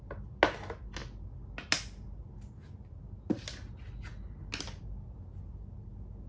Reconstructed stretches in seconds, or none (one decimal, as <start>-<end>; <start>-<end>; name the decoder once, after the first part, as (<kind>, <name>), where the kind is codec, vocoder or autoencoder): none